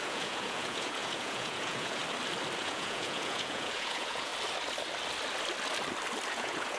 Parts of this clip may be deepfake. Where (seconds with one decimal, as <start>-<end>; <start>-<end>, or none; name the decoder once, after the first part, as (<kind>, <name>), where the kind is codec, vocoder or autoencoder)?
0.0-2.0 (vocoder, Vocos); 2.6-4.3; 6.3-6.8

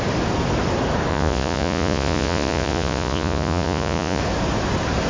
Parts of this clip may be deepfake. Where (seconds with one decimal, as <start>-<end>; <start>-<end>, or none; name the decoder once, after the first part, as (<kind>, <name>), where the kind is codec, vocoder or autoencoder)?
1.1-4.2 (vocoder, Vocos)

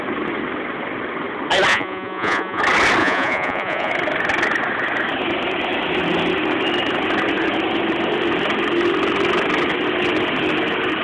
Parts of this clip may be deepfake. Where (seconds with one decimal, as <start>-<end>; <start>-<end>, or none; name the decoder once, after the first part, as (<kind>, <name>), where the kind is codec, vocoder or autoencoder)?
1.7-2.6 (vocoder, Vocos); 3.0-3.9

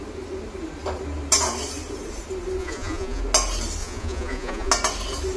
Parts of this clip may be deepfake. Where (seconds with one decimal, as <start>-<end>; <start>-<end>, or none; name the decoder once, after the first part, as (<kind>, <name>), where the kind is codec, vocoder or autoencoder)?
2.6-3.2 (vocoder, Vocos); 3.8-4.7

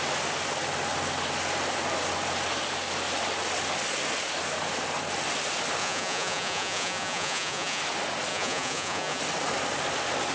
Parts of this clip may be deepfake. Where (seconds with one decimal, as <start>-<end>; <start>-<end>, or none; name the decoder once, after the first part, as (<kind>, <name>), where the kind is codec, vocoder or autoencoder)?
5.8-7.8 (vocoder, Vocos); 8.3-9.2

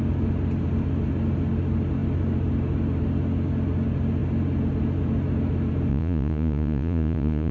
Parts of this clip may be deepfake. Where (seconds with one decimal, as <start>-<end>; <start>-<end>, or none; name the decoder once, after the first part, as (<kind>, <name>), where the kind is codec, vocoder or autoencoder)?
5.9-7.5 (vocoder, Vocos)